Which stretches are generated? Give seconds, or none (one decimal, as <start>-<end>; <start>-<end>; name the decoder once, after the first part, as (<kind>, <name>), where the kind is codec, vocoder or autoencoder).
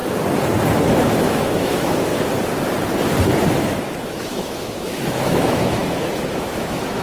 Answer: 0.9-2.1 (autoencoder, DAC-VAE); 3.6-7.0